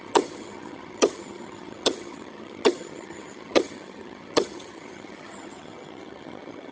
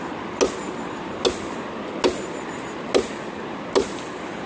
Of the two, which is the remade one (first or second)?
first